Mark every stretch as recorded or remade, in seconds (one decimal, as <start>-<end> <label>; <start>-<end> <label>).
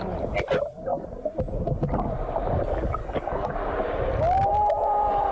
0.0-3.0 recorded; 3.0-3.7 remade; 3.7-5.3 recorded